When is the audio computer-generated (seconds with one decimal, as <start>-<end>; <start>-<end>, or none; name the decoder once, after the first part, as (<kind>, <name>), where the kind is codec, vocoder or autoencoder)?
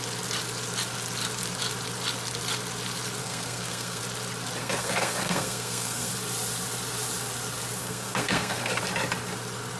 3.2-4.0 (codec, SNAC); 4.6-6.1; 7.8-8.8